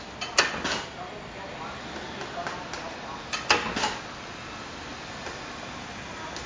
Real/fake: real